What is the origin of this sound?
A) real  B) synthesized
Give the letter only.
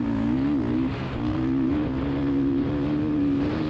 A